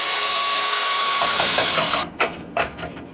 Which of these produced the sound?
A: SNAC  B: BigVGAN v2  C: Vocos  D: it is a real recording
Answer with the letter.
A